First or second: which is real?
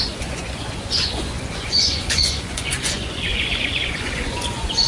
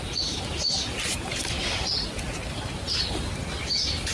second